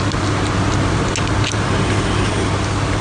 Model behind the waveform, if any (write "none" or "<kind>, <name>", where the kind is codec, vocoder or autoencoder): none